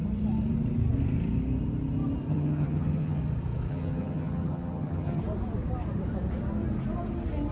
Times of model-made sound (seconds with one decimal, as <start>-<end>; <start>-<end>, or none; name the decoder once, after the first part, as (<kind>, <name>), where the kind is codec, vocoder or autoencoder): 2.3-3.2 (vocoder, HiFi-GAN); 3.7-5.2